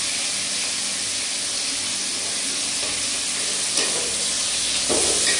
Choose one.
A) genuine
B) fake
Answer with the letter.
A